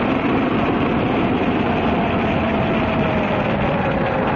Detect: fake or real real